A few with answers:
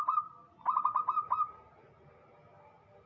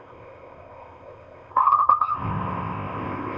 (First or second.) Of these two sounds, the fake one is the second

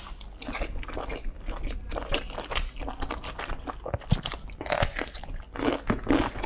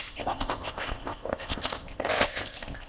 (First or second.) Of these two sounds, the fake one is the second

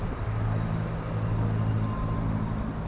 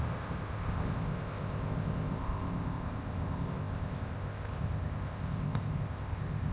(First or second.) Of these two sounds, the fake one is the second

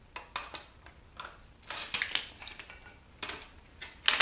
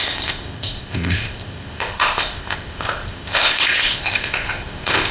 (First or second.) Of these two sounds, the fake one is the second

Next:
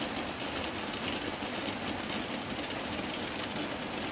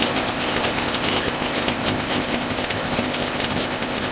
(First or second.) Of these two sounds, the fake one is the second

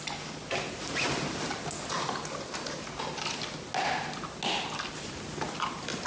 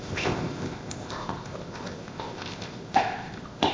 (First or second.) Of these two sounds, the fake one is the second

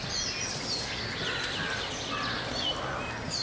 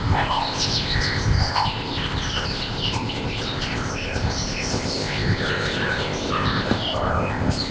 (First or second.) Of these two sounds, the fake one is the second